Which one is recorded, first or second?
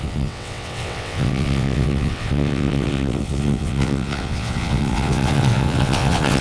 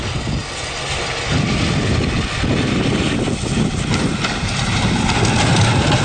second